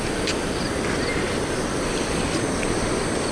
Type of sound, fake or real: real